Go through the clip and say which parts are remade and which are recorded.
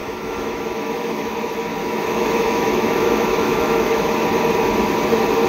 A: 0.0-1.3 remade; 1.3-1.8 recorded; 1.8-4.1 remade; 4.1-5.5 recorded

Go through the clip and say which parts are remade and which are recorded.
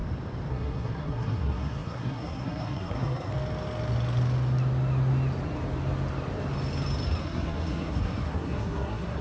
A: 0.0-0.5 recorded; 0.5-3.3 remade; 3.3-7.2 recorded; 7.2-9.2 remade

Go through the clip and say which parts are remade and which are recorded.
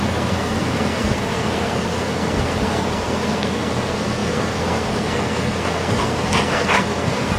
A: 0.0-7.4 remade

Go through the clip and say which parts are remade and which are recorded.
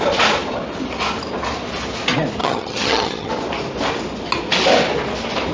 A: 0.0-2.4 recorded; 2.4-3.3 remade; 3.3-5.5 recorded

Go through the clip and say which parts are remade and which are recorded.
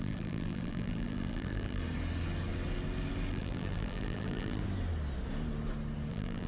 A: 0.0-1.8 remade; 1.8-3.3 recorded; 3.3-4.6 remade; 4.6-6.1 recorded; 6.1-6.5 remade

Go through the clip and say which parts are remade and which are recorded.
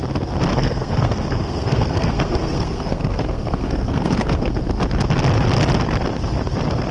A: 0.0-0.5 recorded; 0.5-4.6 remade; 4.6-6.9 recorded